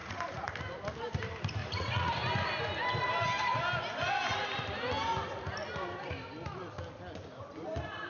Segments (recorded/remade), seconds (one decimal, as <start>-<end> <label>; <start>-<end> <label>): 0.0-0.5 remade; 0.5-1.6 recorded; 1.6-2.1 remade; 2.1-8.1 recorded